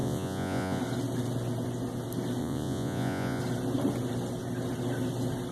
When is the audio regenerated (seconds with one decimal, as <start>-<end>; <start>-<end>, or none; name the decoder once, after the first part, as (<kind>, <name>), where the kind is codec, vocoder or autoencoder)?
0.0-0.8 (vocoder, Vocos); 2.4-3.4